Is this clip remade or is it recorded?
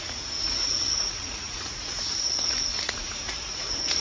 remade